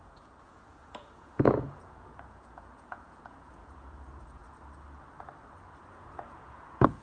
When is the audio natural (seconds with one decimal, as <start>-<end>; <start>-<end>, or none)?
4.4-5.9